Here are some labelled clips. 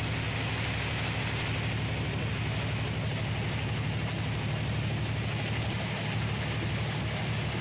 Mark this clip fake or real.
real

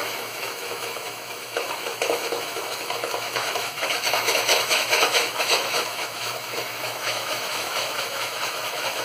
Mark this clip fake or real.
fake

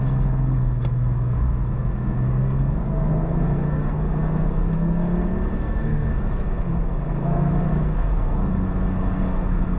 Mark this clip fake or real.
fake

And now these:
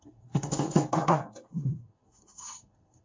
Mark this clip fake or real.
fake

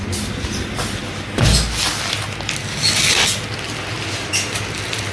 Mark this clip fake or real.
real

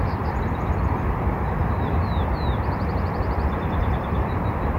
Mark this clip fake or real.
fake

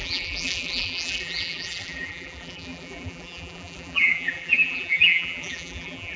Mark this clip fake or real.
fake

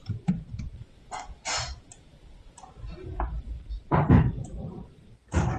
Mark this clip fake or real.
fake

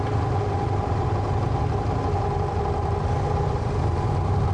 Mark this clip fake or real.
real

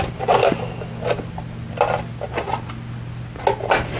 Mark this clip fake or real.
real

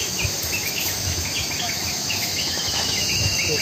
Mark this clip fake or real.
fake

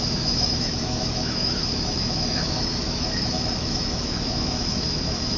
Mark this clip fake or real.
fake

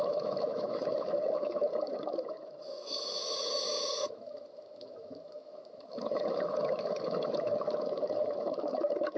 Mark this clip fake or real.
fake